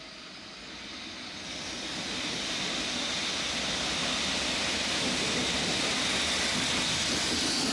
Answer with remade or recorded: recorded